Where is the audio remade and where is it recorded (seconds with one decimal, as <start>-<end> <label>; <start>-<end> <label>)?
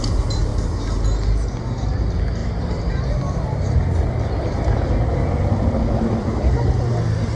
0.0-7.4 recorded